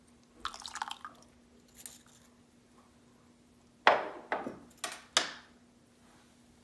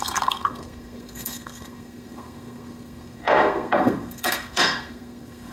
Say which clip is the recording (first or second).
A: first